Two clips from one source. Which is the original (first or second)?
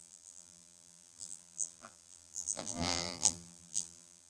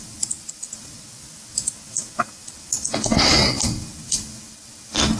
second